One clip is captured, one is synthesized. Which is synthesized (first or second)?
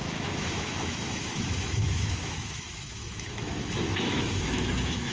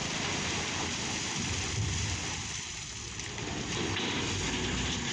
first